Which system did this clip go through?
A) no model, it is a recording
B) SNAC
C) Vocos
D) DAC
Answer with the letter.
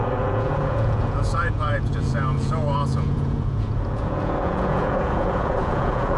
C